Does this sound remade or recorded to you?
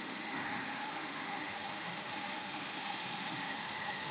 remade